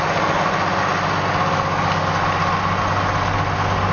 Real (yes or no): yes